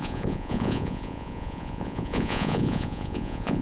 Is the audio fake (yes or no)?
yes